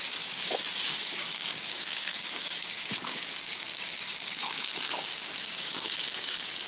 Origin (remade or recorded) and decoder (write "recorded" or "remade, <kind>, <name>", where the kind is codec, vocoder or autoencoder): remade, codec, DAC